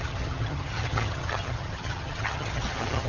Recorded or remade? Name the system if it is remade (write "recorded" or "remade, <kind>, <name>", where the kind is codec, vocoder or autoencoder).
remade, vocoder, HiFi-GAN